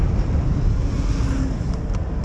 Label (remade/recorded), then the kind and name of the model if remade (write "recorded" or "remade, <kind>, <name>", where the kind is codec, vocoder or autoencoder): recorded